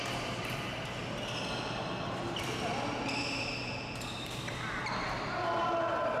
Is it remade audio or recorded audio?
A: recorded